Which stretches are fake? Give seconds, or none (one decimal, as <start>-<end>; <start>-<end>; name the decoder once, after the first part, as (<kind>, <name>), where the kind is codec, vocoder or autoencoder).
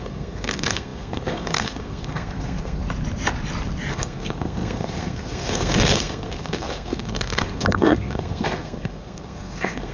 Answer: 0.0-2.8 (codec, SNAC); 3.9-9.9